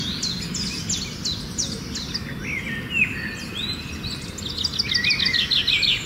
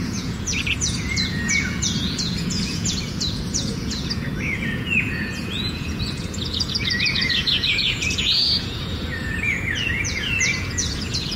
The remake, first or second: second